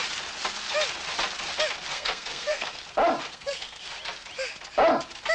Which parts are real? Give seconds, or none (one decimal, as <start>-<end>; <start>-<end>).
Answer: 0.0-1.9; 2.8-3.2; 3.8-5.3